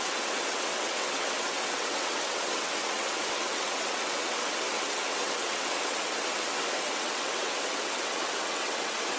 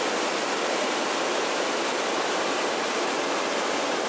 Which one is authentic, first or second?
second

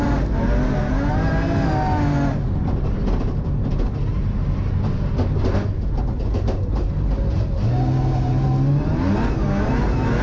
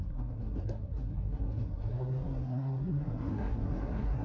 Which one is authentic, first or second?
first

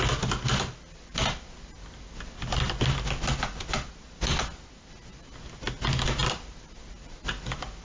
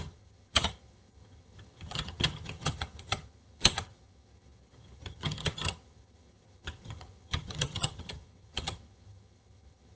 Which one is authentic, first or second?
first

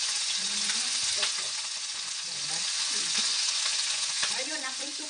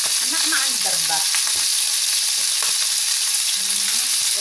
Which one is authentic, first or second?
second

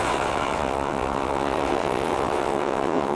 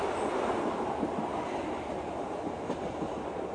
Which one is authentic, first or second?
second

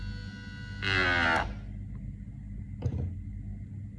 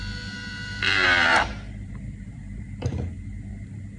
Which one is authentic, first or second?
first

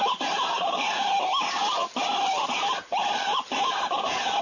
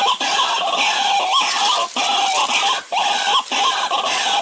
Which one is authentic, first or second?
second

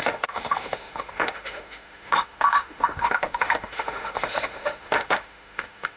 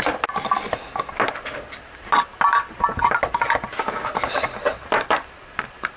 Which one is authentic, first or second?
second